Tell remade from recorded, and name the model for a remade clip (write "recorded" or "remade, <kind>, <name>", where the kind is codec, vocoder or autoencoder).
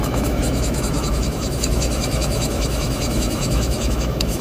remade, autoencoder, DAC-VAE